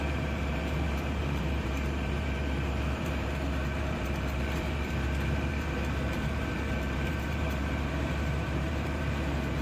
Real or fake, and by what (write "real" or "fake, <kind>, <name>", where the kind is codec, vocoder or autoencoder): fake, vocoder, BigVGAN v2